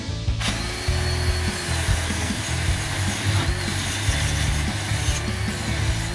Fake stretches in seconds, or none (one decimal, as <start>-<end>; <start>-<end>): 1.9-2.4